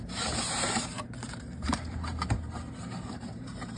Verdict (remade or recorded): remade